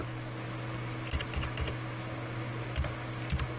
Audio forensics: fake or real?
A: real